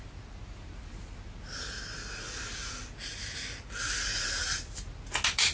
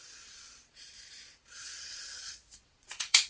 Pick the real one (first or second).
first